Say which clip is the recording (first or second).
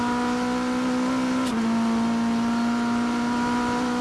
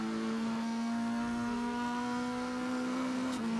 first